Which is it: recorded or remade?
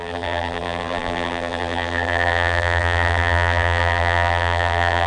remade